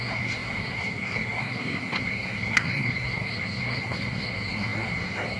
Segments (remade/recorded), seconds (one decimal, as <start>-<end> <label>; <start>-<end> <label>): 0.0-5.4 remade

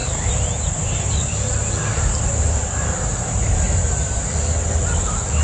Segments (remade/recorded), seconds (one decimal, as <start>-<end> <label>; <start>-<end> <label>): 0.0-1.2 remade; 1.2-1.9 recorded; 1.9-4.2 remade; 4.2-5.4 recorded

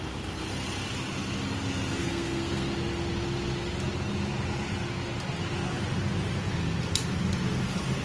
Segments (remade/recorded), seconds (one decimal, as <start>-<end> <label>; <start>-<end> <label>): 0.0-2.0 recorded; 2.0-2.7 remade; 2.7-8.0 recorded

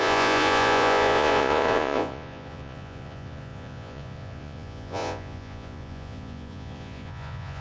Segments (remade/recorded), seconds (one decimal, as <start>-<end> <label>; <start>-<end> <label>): 0.0-7.6 remade